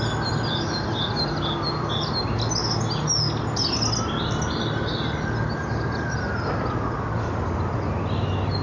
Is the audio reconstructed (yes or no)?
no